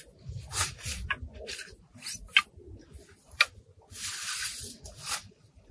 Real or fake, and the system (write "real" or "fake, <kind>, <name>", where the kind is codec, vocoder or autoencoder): real